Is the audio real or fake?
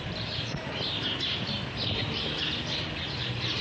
fake